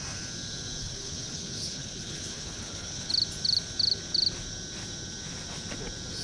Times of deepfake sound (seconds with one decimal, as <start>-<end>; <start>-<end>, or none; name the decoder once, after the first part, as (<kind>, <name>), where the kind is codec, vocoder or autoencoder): 0.8-3.1 (codec, HILCodec)